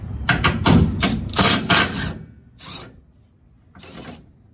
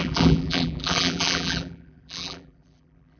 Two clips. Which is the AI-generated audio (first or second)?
second